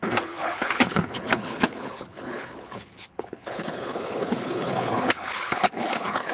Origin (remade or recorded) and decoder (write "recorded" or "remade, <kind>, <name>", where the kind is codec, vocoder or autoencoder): remade, codec, HILCodec